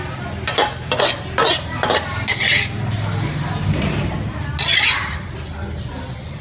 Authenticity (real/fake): real